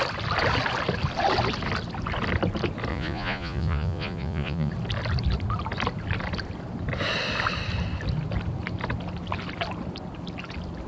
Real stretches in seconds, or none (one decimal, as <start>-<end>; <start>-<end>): 0.0-2.9; 4.7-10.9